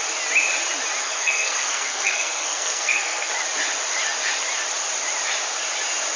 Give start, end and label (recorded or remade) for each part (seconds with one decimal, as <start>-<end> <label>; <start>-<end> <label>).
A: 0.0-1.0 recorded; 1.0-3.3 remade; 3.3-6.2 recorded